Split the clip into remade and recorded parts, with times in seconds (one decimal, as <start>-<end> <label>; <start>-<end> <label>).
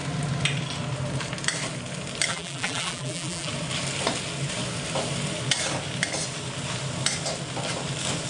0.0-2.3 recorded; 2.3-3.5 remade; 3.5-8.3 recorded